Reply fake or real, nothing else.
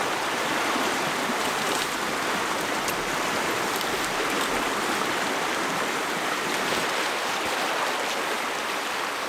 real